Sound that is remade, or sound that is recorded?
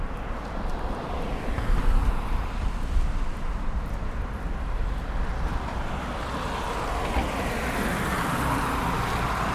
recorded